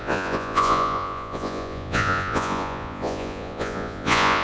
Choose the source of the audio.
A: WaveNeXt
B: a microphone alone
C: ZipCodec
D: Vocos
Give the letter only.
D